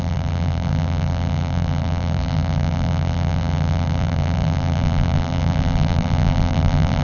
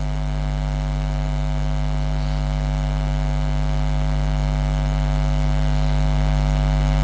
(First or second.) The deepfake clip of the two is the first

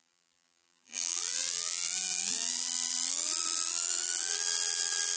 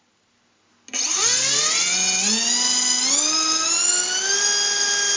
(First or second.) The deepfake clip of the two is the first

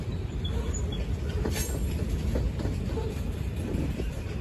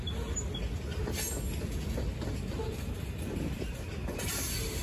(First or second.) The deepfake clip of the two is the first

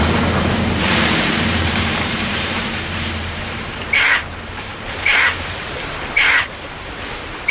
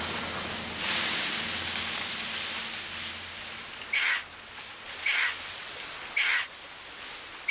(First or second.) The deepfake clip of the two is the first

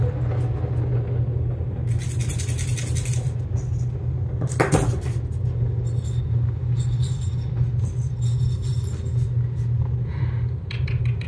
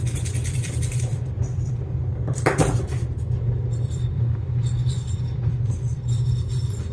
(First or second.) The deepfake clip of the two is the second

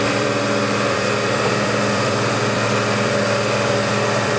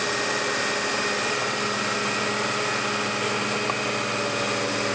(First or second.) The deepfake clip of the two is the first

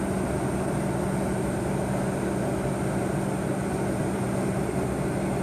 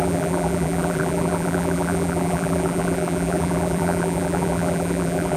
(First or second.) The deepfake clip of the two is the second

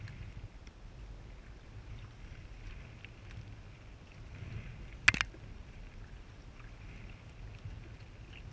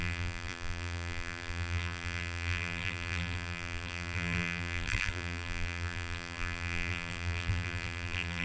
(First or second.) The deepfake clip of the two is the second